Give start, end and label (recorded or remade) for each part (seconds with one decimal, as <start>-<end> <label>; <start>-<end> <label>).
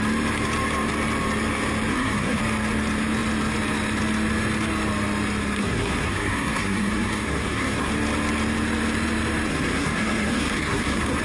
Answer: 0.0-1.9 recorded; 1.9-2.4 remade; 2.4-5.6 recorded; 5.6-7.9 remade; 7.9-9.5 recorded; 9.5-11.2 remade